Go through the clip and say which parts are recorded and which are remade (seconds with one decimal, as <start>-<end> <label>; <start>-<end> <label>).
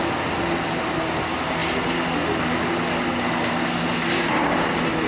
0.0-5.1 recorded